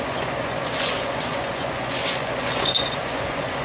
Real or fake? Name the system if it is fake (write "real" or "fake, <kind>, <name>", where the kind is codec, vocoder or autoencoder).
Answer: fake, vocoder, Vocos